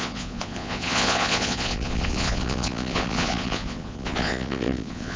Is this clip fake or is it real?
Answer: fake